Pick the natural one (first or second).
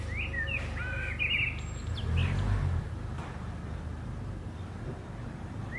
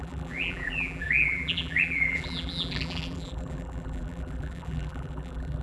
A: first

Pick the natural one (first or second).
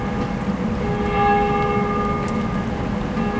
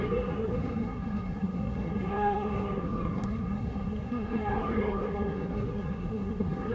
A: first